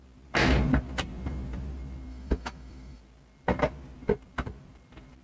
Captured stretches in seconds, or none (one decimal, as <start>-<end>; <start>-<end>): 0.0-2.1; 3.0-5.2